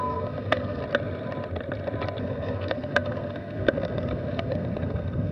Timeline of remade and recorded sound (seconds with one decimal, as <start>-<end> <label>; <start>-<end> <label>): 0.0-0.8 remade; 0.8-2.2 recorded; 2.2-5.3 remade